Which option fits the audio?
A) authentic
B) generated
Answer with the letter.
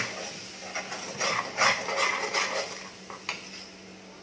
A